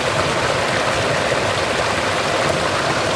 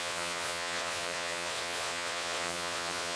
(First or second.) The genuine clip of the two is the first